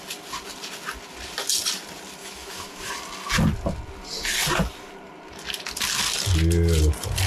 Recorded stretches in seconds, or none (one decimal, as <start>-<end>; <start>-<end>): 0.0-2.2; 2.9-7.3